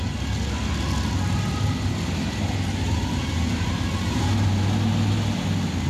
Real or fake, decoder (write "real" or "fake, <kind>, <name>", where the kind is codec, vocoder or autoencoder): real